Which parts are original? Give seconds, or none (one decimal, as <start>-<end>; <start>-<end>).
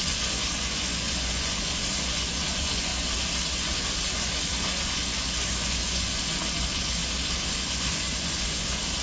2.9-3.5; 7.0-7.5